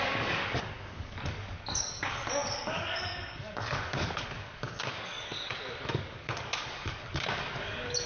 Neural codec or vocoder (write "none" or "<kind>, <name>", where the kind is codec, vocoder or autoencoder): codec, DAC